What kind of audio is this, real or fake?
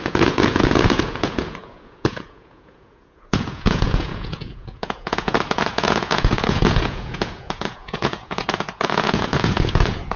fake